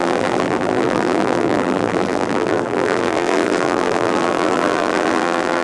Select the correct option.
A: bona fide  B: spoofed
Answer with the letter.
B